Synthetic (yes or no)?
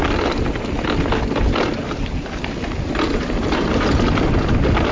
no